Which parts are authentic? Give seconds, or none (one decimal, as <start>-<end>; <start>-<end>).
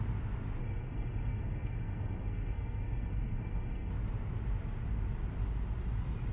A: 0.0-0.6; 3.9-6.3